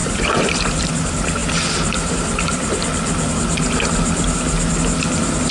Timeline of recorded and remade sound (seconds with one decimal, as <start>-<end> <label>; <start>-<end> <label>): 0.0-0.9 remade; 0.9-5.5 recorded